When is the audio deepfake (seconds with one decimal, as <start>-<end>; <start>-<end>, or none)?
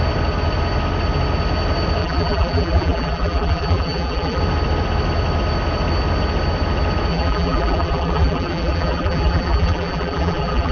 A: 2.0-4.4; 7.1-10.7